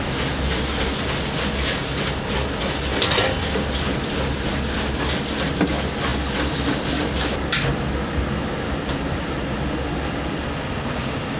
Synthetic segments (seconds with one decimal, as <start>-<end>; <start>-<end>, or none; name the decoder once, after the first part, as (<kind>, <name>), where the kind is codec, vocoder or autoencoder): none